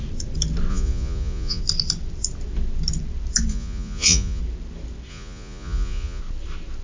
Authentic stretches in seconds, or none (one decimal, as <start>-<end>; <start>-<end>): 0.0-0.7; 1.6-3.5; 4.4-5.1; 6.2-6.8